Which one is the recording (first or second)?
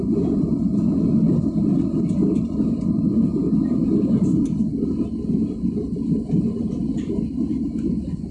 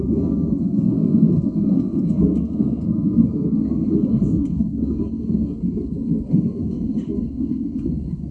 first